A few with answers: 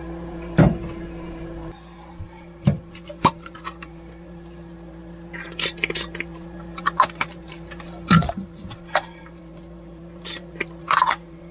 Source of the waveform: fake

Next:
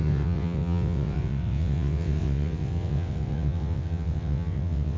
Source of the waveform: fake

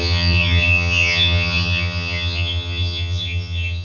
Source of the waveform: fake